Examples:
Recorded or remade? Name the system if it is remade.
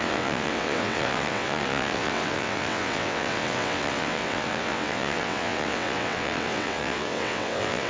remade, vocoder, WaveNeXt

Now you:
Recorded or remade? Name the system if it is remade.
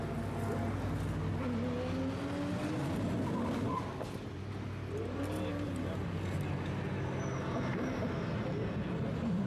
recorded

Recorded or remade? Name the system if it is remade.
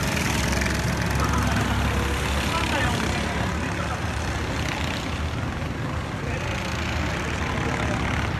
recorded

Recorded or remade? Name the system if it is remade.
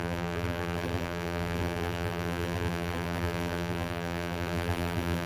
remade, vocoder, BigVGAN v2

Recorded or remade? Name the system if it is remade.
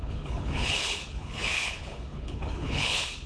remade, codec, HILCodec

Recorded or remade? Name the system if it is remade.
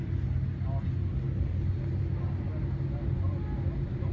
recorded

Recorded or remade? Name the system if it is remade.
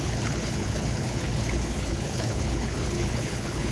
remade, codec, HILCodec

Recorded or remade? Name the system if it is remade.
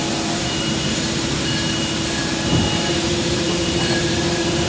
remade, vocoder, BigVGAN v2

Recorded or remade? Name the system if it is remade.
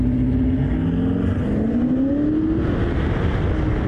recorded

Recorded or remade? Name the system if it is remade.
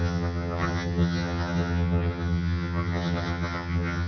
remade, vocoder, HiFi-GAN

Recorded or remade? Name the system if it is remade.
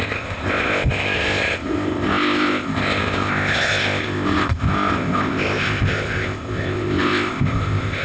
remade, codec, ZipCodec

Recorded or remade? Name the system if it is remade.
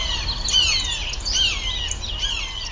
recorded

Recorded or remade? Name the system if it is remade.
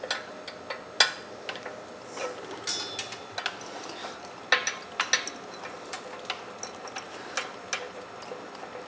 recorded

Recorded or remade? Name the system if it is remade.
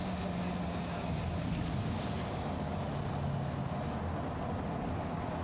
recorded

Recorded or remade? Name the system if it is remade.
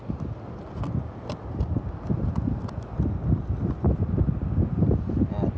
recorded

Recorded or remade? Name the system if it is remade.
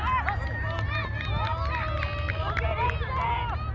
recorded